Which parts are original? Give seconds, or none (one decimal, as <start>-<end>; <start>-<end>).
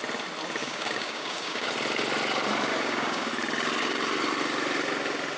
0.0-0.6; 1.7-2.7; 3.3-5.4